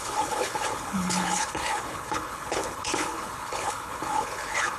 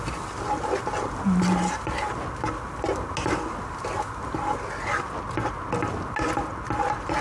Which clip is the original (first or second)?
second